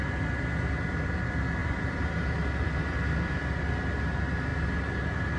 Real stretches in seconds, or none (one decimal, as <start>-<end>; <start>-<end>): 0.0-1.6; 3.6-5.4